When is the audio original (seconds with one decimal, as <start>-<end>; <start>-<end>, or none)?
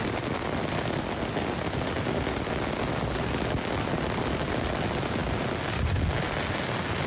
0.0-7.1